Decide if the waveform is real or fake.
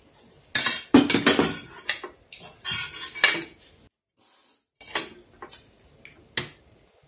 real